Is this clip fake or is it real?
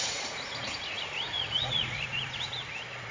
fake